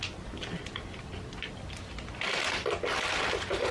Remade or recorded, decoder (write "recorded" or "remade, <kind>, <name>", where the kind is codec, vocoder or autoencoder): recorded